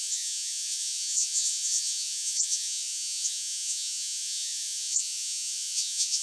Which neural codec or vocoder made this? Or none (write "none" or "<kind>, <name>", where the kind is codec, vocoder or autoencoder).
vocoder, Vocos